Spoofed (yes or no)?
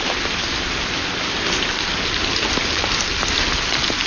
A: no